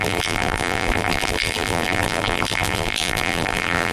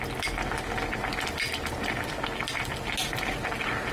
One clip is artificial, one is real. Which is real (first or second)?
second